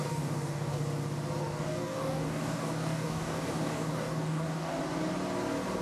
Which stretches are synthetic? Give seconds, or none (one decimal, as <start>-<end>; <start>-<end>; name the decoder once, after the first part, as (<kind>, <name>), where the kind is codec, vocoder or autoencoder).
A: 0.0-0.8 (codec, DAC); 1.4-4.8